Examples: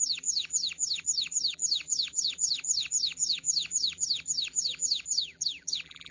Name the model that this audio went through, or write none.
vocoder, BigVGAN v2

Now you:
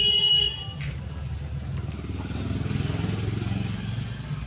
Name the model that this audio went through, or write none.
none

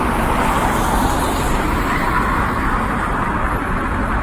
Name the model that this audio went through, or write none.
none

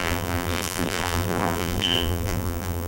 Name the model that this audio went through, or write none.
vocoder, BigVGAN v2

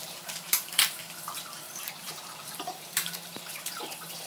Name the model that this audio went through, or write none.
vocoder, BigVGAN v2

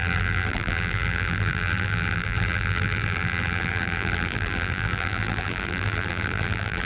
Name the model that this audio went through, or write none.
vocoder, BigVGAN v2